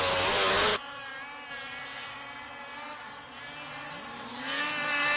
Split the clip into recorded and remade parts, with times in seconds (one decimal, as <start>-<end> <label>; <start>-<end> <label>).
0.0-5.2 recorded